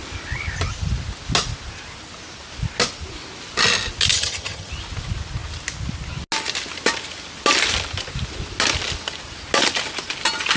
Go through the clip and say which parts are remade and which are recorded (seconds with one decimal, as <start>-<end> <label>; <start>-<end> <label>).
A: 0.0-4.1 recorded; 4.1-4.7 remade; 4.7-10.6 recorded